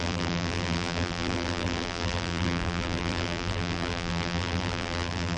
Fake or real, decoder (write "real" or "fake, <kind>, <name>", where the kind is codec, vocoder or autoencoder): fake, vocoder, BigVGAN v2